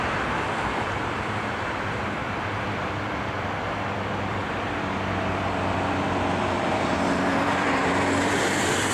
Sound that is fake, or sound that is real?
fake